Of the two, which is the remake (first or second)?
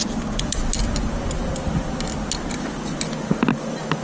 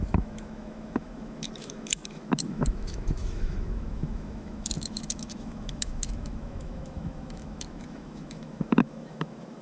second